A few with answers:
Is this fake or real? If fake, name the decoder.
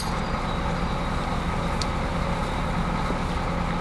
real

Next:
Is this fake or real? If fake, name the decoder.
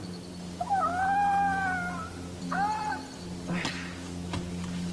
real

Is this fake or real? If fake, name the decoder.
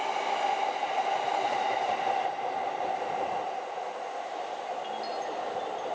real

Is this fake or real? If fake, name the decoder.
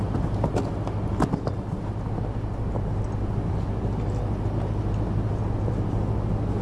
real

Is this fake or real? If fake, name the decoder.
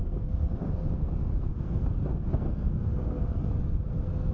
fake, codec, SNAC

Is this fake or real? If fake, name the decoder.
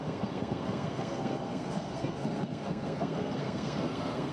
fake, codec, SNAC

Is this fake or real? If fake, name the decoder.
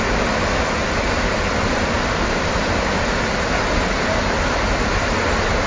real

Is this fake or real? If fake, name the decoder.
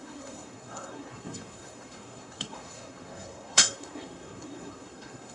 fake, codec, SNAC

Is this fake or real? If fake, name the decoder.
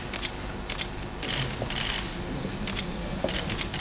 real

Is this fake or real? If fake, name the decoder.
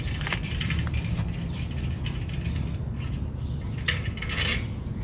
real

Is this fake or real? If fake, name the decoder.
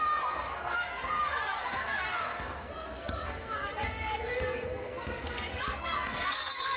fake, codec, SNAC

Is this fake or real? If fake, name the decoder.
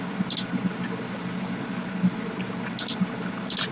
real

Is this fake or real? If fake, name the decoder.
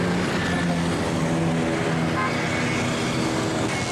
real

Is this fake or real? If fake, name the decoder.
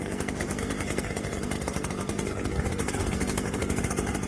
fake, codec, SNAC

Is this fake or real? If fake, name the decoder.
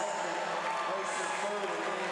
real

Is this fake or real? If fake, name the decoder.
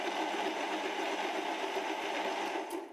real